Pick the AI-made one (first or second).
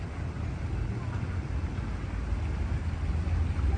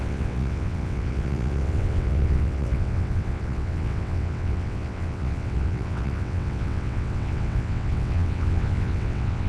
second